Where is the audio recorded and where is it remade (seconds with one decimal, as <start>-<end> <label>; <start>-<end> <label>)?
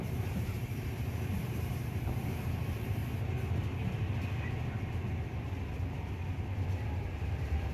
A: 0.0-3.0 remade; 3.0-6.7 recorded; 6.7-7.7 remade